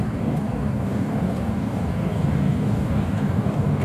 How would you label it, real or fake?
fake